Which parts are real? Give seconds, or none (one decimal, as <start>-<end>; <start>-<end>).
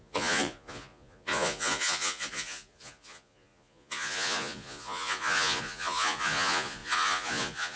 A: none